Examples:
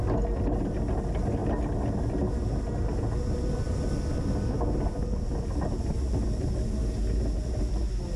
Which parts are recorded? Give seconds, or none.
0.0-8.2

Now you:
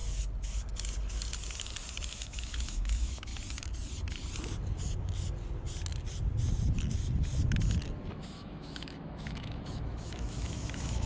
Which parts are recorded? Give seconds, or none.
0.0-2.1; 3.3-8.1

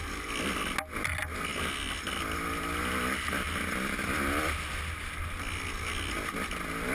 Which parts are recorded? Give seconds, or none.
0.0-6.9

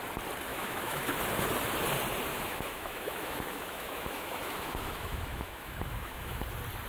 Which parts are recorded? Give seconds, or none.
0.0-0.5; 1.0-2.3; 6.4-6.9

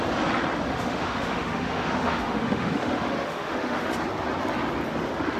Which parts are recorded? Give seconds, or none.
0.0-0.7; 3.9-5.4

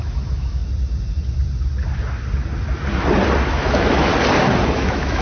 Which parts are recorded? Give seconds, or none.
0.6-3.5; 4.1-4.7

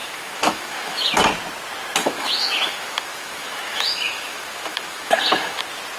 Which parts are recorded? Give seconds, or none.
1.1-2.0; 5.6-6.0